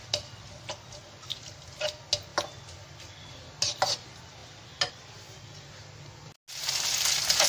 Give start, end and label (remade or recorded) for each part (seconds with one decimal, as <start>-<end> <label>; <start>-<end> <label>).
0.0-7.5 recorded